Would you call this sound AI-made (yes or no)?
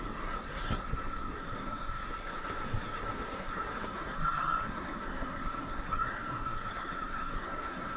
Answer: yes